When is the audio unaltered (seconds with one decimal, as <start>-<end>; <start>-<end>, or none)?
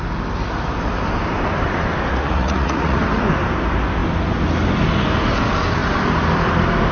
0.0-2.1; 3.0-6.9